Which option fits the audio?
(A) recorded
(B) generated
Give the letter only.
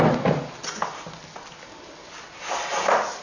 A